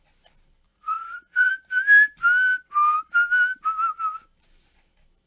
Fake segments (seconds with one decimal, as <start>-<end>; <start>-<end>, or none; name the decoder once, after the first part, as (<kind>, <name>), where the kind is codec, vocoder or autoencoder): 0.7-1.5 (vocoder, Vocos)